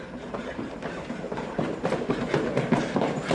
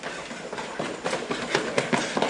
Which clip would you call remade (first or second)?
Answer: first